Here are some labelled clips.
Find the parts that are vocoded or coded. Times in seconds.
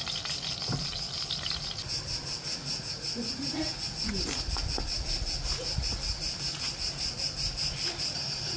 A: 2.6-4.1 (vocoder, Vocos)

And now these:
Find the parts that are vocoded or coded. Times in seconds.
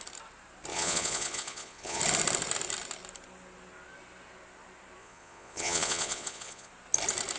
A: 0.7-2.0 (vocoder, Vocos); 5.0-6.7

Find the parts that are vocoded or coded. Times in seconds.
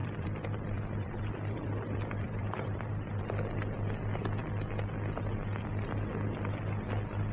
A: 0.0-3.2 (vocoder, BigVGAN v2)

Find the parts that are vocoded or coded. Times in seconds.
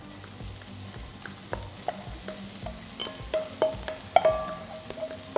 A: none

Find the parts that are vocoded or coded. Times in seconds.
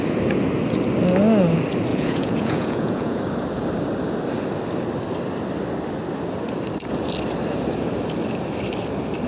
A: 1.9-3.2 (vocoder, Vocos)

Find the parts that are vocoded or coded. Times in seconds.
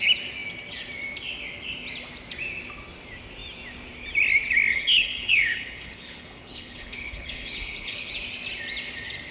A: 4.7-8.1 (codec, HILCodec)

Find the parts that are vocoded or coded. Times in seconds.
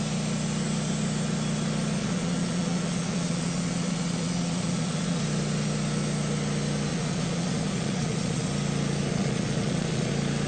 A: 2.0-5.2 (vocoder, Vocos); 6.9-8.5; 9.1-10.1